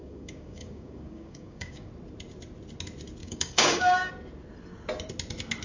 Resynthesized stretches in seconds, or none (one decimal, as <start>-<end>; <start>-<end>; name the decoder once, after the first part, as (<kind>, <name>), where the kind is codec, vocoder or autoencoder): 0.0-1.9 (codec, DAC); 3.2-4.1